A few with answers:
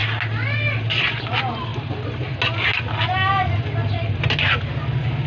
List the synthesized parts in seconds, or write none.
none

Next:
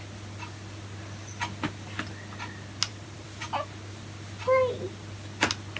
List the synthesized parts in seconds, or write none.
2.9-3.4 (vocoder, BigVGAN v2)

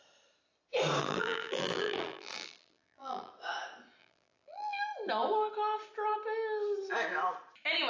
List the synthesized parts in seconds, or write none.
1.0-3.3 (vocoder, BigVGAN v2); 4.0-4.8

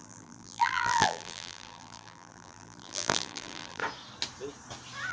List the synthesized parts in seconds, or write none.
0.0-3.8 (vocoder, BigVGAN v2)